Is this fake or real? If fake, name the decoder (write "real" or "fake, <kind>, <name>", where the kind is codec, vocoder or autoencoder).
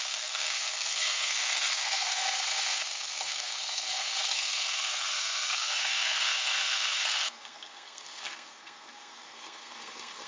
fake, codec, SNAC